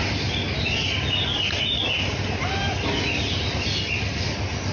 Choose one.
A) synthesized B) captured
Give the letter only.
B